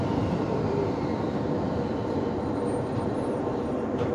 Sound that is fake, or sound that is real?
fake